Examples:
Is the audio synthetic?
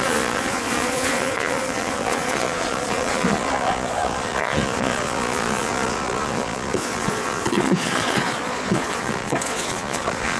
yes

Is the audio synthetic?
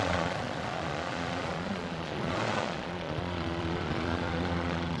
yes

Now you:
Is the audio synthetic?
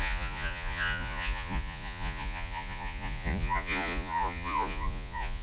yes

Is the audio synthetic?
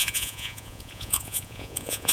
yes